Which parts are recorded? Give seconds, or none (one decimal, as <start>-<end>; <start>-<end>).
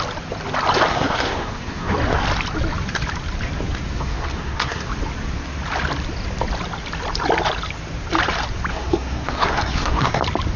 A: 0.0-0.9; 1.9-4.0; 4.9-8.7; 10.2-10.6